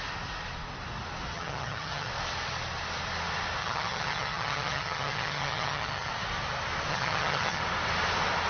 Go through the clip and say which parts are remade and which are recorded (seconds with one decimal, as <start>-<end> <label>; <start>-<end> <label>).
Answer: 0.0-1.3 recorded; 1.3-2.1 remade; 2.1-3.6 recorded; 3.6-6.1 remade; 6.1-6.9 recorded; 6.9-7.6 remade; 7.6-8.5 recorded